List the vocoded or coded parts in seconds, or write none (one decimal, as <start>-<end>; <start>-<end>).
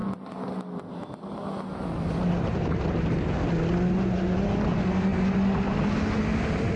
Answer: none